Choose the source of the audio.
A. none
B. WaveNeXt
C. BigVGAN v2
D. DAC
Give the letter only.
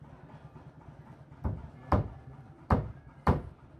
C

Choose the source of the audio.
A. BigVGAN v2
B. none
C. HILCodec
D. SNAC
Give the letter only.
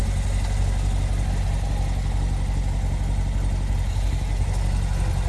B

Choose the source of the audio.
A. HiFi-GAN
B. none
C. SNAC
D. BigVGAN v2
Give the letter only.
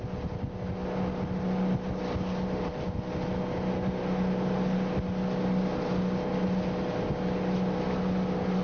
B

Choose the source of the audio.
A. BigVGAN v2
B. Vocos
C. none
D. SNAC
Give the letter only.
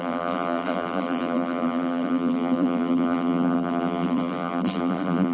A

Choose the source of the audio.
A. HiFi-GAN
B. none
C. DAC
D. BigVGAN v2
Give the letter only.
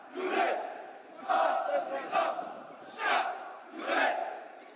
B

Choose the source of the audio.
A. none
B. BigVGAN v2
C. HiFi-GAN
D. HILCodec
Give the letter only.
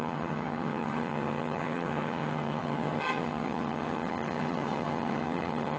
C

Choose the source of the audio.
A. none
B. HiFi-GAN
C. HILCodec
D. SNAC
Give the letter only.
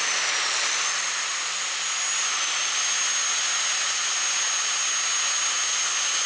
A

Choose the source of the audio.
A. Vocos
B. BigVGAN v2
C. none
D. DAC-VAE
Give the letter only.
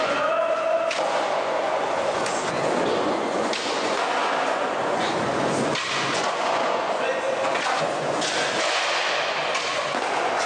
A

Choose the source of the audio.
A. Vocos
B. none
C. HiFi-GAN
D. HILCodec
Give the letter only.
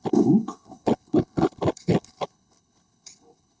D